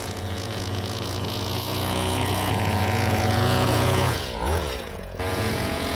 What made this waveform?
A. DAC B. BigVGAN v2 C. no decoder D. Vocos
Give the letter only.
D